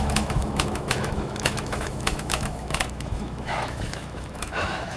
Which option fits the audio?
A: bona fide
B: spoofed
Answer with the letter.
B